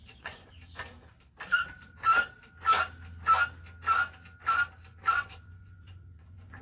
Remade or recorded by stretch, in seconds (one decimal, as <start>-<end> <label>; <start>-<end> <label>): 0.0-0.5 remade; 0.5-5.0 recorded; 5.0-6.6 remade